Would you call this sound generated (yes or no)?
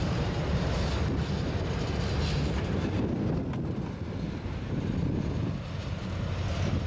no